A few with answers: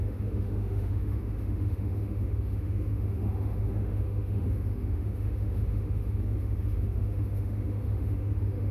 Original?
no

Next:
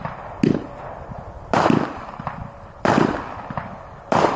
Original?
yes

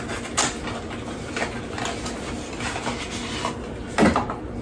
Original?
yes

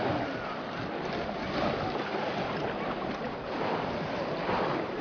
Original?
yes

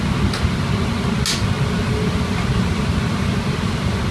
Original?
yes